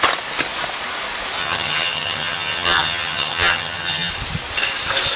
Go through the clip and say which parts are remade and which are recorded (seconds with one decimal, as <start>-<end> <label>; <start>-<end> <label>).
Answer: 0.0-1.4 recorded; 1.4-4.1 remade; 4.1-5.2 recorded